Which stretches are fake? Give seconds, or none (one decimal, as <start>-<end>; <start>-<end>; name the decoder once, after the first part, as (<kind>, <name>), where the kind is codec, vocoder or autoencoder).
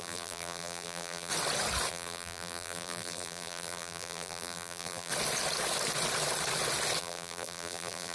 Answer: 0.0-1.3 (vocoder, BigVGAN v2); 1.9-5.1; 7.0-8.1